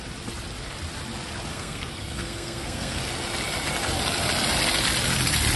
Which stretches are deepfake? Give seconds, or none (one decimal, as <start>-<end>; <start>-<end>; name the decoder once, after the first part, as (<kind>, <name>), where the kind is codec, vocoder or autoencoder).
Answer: 1.5-3.0 (codec, SNAC)